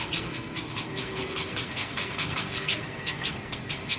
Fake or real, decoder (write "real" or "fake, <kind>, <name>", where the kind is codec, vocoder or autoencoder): fake, codec, SNAC